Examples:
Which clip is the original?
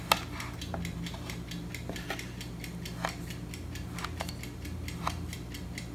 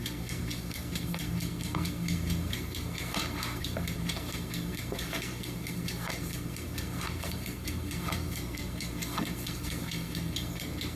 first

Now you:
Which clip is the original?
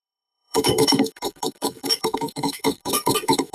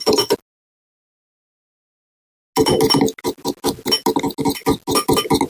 second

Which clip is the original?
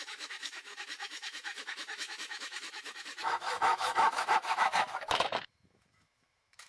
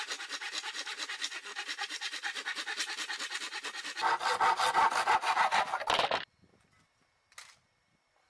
second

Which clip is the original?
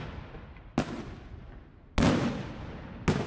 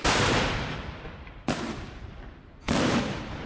first